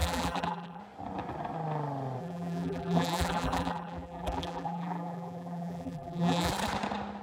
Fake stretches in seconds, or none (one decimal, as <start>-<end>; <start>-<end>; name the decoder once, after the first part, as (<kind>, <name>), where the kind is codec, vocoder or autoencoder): 0.0-0.8 (vocoder, BigVGAN v2); 2.2-6.5